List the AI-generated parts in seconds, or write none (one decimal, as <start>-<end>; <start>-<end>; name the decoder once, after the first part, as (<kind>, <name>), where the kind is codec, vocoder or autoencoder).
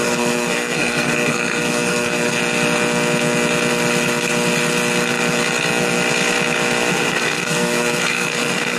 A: 0.0-2.4 (codec, SNAC); 6.9-8.8